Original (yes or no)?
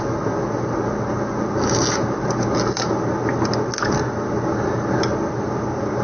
yes